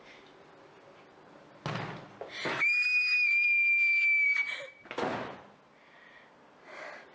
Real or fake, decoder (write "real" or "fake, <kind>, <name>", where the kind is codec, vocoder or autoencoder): real